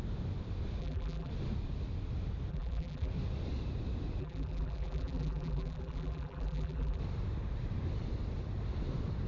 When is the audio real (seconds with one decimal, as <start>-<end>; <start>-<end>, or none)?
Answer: 0.0-0.8; 1.3-2.5; 3.1-4.2; 7.0-9.3